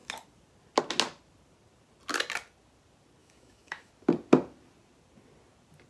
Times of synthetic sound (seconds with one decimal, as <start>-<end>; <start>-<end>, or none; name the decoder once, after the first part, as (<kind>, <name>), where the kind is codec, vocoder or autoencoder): 3.2-3.9 (autoencoder, DAC-VAE)